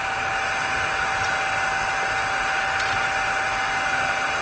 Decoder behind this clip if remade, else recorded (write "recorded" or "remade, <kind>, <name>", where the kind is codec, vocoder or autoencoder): recorded